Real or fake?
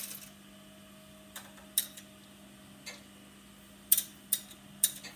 real